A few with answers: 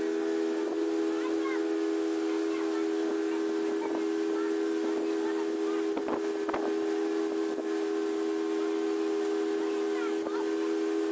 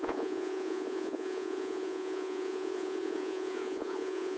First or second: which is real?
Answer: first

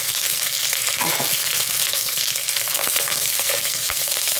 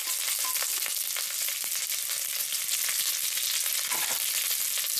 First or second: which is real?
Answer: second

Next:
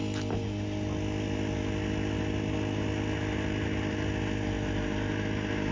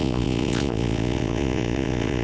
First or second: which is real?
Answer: first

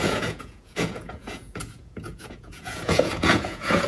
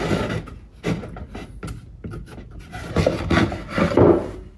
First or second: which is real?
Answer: second